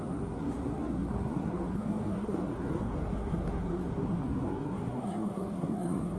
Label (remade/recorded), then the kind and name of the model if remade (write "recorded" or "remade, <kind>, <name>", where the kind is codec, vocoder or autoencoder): remade, codec, SNAC